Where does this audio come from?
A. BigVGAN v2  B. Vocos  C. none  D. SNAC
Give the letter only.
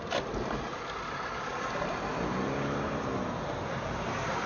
C